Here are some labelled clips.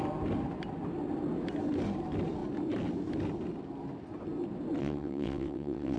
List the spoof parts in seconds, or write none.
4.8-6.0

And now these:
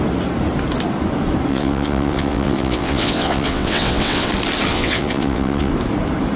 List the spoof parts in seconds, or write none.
1.5-4.3; 4.7-5.7

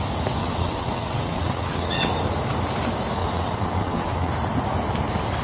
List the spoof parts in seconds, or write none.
0.4-2.1; 3.2-4.3

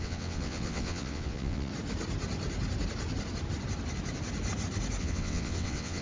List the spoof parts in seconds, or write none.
0.0-1.7; 5.0-6.0

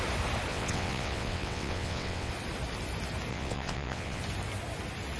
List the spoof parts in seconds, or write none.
0.5-2.3; 3.3-4.2

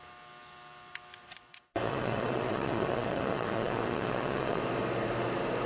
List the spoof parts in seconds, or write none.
1.2-4.6

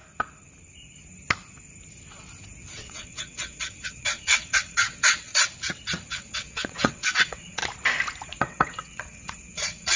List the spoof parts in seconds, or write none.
2.8-5.3; 6.1-7.6; 8.4-10.0

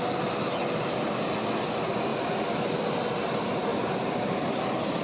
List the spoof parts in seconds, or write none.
none